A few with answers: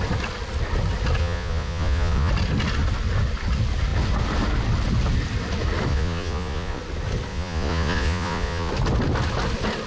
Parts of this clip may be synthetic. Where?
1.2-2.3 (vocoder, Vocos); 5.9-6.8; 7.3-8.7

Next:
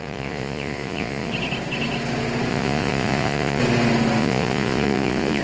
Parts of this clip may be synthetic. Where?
0.0-1.3 (vocoder, Vocos); 2.5-3.6; 4.2-5.4

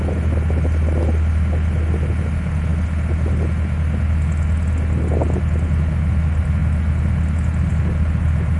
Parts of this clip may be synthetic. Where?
none

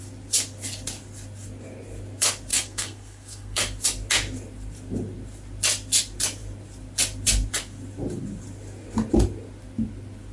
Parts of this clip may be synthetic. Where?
2.5-3.6 (codec, SNAC)